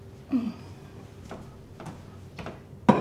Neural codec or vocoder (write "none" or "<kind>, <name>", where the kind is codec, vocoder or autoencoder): none